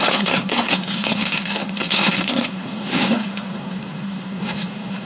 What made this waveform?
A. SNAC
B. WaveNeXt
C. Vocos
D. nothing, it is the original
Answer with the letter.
A